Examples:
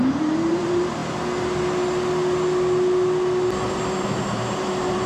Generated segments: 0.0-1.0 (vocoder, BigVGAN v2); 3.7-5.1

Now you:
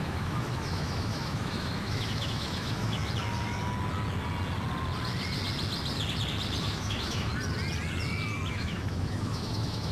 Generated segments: 0.0-3.0 (autoencoder, DAC-VAE); 6.6-7.3; 8.5-9.9

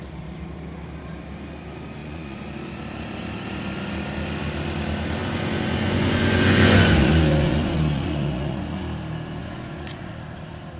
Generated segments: 2.0-2.5 (vocoder, Vocos); 5.2-8.8; 9.4-10.1

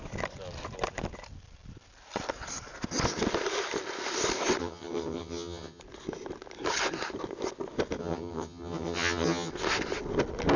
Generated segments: 4.6-5.8 (vocoder, HiFi-GAN); 8.0-9.5

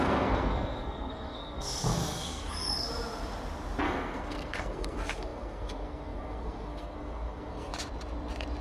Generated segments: 0.0-2.9 (codec, SNAC); 3.8-7.7

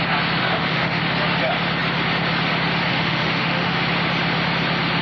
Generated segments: 0.4-1.0 (autoencoder, DAC-VAE); 2.9-3.8